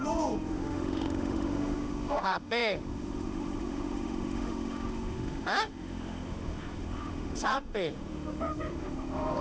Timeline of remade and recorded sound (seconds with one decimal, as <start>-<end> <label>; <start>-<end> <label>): 0.0-9.4 remade